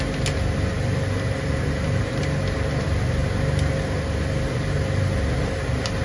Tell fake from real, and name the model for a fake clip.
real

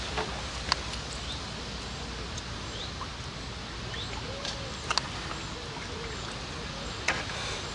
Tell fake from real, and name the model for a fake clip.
real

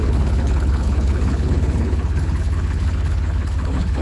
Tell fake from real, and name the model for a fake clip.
fake, codec, HILCodec